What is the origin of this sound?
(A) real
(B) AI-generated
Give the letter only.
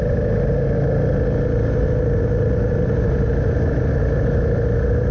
A